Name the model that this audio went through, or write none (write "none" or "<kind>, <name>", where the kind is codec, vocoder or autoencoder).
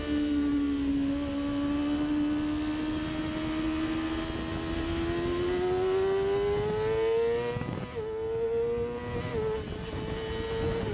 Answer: none